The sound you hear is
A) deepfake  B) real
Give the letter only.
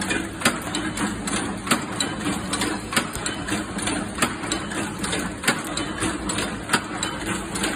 B